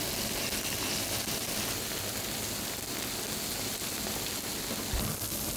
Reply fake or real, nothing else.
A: real